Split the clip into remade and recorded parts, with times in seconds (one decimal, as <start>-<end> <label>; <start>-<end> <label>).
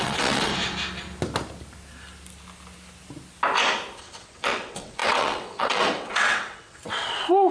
0.0-0.5 remade; 0.5-4.0 recorded; 4.0-7.5 remade